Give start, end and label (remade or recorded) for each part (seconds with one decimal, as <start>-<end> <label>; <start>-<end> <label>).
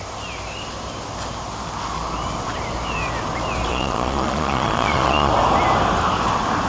0.0-3.7 recorded; 3.7-5.3 remade; 5.3-6.7 recorded